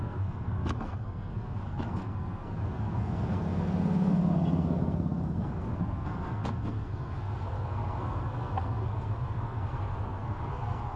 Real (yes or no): no